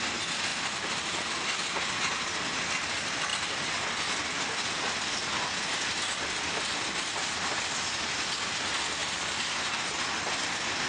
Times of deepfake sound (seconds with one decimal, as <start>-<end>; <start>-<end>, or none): 0.5-1.3; 9.0-9.8